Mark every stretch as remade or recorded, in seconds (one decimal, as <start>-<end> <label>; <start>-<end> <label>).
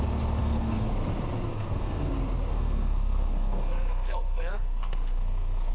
0.0-0.4 recorded; 0.4-0.9 remade; 0.9-1.5 recorded; 1.5-2.1 remade; 2.1-2.5 recorded; 2.5-5.7 remade